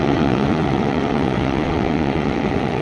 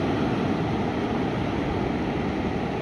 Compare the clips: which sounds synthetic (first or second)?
first